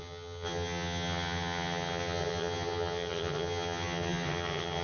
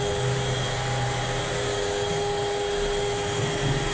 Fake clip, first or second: first